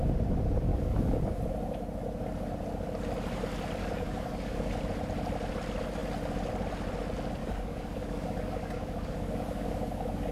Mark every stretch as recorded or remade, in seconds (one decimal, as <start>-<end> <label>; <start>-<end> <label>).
0.0-0.7 recorded; 0.7-1.4 remade; 1.4-3.8 recorded; 3.8-4.7 remade; 4.7-7.4 recorded; 7.4-10.3 remade